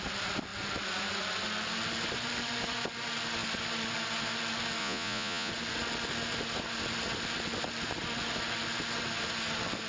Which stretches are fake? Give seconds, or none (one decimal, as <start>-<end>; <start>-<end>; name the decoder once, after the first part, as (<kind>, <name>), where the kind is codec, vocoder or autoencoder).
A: 4.8-5.5 (vocoder, Vocos)